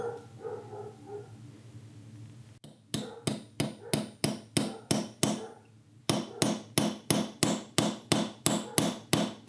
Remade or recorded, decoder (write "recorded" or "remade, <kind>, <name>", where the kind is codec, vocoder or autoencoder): recorded